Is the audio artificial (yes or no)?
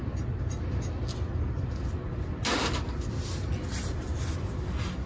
no